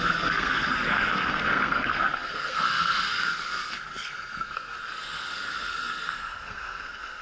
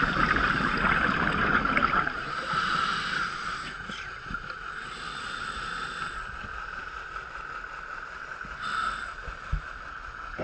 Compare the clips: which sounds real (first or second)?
second